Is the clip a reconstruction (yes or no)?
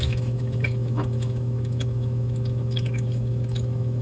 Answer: yes